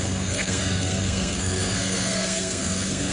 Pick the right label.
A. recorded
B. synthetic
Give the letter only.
B